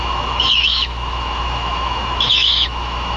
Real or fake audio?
fake